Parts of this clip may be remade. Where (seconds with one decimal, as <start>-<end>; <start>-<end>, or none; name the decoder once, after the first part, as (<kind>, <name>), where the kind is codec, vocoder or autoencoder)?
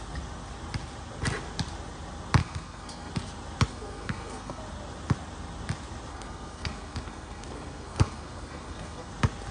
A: 2.4-3.1 (codec, SNAC); 3.7-4.6; 6.1-9.1